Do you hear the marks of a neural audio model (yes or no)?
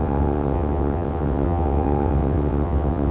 yes